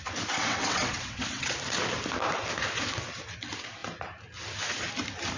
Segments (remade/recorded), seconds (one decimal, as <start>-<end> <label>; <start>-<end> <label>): 0.0-0.4 recorded; 0.4-1.5 remade; 1.5-5.4 recorded

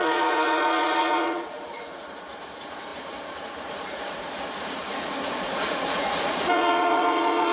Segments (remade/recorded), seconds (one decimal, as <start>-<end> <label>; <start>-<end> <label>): 0.0-7.5 remade

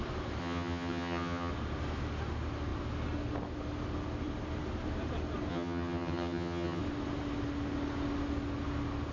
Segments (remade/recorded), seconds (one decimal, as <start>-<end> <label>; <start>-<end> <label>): 0.0-0.4 recorded; 0.4-1.5 remade; 1.5-5.5 recorded; 5.5-6.8 remade; 6.8-9.1 recorded

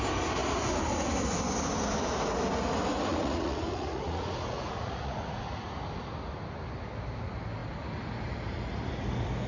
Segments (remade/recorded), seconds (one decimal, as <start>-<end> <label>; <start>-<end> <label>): 0.0-3.1 recorded; 3.1-5.8 remade; 5.8-9.5 recorded

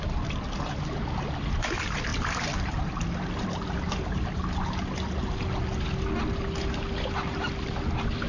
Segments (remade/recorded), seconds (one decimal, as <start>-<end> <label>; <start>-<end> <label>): 0.0-8.3 recorded

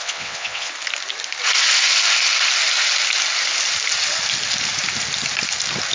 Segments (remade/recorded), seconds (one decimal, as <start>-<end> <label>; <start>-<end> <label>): 0.0-0.7 remade; 0.7-5.9 recorded